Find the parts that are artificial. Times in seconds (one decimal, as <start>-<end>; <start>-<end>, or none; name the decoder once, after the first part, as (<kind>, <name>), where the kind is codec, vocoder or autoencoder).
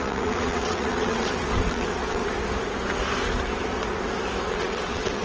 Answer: 0.0-2.2 (vocoder, WaveNeXt); 4.5-5.2